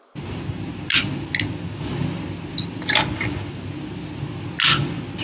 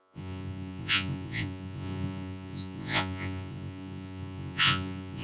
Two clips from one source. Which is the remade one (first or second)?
second